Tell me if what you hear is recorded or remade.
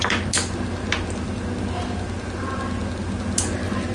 recorded